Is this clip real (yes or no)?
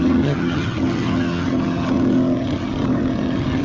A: no